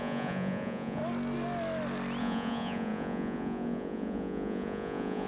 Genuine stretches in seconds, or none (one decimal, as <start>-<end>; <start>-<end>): 1.0-2.2